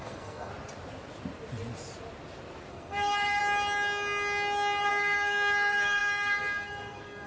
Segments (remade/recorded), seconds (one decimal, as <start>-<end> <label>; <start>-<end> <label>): 0.0-0.5 remade; 0.5-2.7 recorded; 2.7-3.4 remade; 3.4-4.9 recorded; 4.9-7.3 remade